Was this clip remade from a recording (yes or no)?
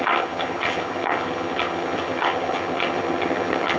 yes